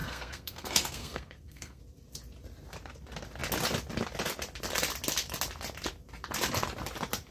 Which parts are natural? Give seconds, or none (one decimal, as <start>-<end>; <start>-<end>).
1.8-7.3